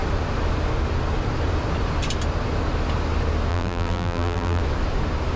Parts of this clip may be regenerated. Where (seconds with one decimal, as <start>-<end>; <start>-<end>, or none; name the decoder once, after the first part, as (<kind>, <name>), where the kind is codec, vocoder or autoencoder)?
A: 3.5-4.6 (vocoder, BigVGAN v2)

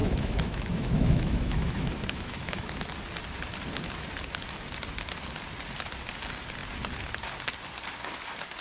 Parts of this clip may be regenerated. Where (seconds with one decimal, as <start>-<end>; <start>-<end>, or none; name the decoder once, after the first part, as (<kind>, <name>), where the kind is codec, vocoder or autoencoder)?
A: 0.0-2.9 (autoencoder, DAC-VAE)

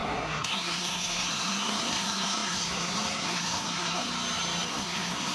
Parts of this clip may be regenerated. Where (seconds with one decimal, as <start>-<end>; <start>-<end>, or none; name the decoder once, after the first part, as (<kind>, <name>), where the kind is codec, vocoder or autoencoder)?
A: 0.0-4.1 (codec, SNAC); 4.7-5.3

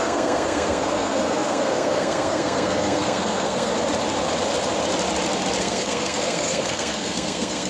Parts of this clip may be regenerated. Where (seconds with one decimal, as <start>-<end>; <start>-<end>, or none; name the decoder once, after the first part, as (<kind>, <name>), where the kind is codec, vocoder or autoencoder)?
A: 0.0-3.7 (codec, SNAC); 5.6-7.7